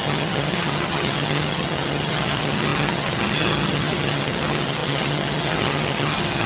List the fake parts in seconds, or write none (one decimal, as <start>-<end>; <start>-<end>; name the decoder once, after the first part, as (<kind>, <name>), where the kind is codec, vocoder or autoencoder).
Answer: 0.0-6.5 (vocoder, HiFi-GAN)